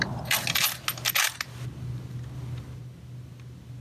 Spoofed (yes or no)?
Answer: no